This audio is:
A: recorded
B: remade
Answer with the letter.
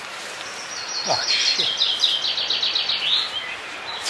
A